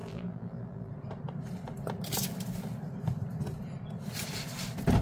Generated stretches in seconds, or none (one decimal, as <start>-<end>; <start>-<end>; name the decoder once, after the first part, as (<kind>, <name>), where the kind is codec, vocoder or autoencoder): 0.0-0.9 (vocoder, BigVGAN v2)